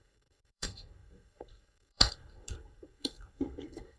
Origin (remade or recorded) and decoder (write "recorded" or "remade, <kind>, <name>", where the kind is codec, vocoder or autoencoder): remade, codec, SNAC